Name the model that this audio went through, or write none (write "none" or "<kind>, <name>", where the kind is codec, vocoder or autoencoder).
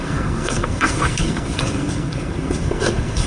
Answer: codec, SNAC